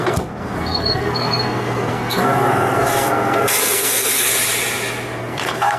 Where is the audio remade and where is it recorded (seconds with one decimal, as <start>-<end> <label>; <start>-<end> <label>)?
0.0-4.3 remade; 4.3-5.2 recorded; 5.2-5.8 remade